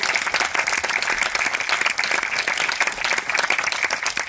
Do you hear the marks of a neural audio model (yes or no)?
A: no